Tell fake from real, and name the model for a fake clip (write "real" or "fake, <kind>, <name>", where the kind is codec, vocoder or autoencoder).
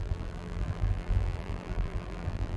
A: fake, vocoder, BigVGAN v2